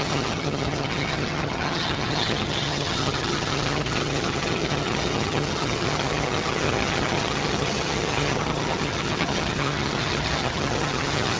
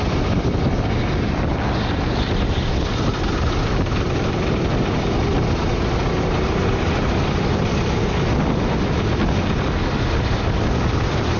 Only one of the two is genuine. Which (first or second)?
second